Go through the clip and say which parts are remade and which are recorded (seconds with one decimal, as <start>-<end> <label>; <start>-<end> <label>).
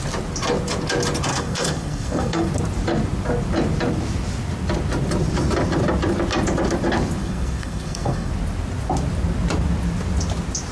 0.0-1.3 recorded; 1.3-2.5 remade; 2.5-7.2 recorded; 7.2-8.3 remade; 8.3-10.7 recorded